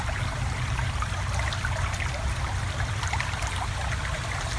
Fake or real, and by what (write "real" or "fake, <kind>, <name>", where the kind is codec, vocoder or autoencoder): real